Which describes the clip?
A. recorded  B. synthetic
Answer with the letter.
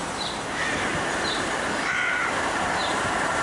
B